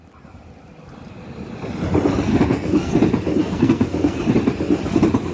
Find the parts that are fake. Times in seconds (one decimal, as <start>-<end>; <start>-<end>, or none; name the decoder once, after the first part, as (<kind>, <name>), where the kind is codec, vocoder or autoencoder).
2.3-2.9 (codec, SNAC); 3.4-4.2